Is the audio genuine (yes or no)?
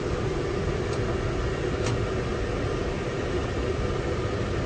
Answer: yes